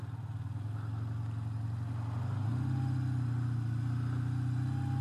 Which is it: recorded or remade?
recorded